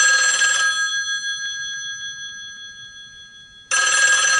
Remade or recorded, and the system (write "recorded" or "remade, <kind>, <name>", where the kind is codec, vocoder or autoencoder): recorded